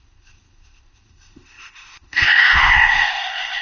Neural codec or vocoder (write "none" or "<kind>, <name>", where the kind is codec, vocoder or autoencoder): codec, ZipCodec